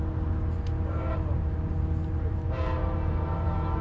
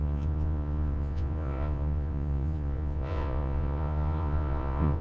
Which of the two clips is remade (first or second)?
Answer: second